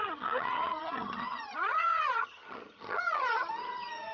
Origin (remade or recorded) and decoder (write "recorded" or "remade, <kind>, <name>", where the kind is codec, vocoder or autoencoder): remade, vocoder, HiFi-GAN